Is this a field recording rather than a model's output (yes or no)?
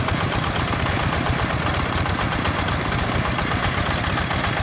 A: yes